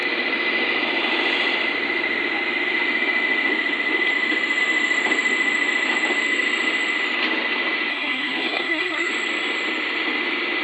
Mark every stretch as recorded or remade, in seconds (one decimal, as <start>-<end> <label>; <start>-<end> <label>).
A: 0.0-7.9 recorded; 7.9-9.1 remade; 9.1-10.6 recorded